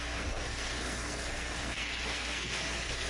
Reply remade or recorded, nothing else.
remade